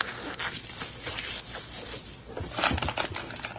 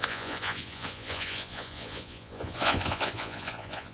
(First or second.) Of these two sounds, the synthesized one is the second